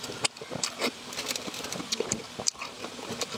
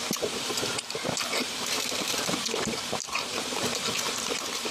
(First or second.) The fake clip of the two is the second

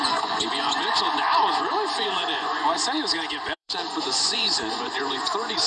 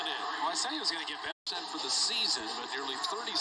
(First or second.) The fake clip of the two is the first